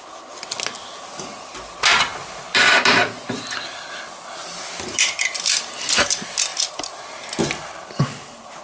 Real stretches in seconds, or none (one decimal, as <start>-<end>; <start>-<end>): 0.0-8.6